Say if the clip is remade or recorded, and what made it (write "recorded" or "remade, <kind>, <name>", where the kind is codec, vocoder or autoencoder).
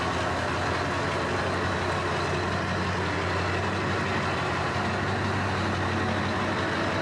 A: recorded